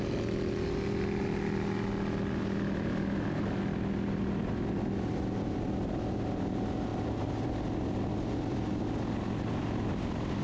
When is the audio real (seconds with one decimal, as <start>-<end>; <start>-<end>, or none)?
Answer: 0.0-10.4